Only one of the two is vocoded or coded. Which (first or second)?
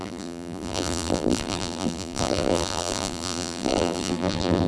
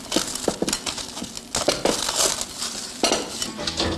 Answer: first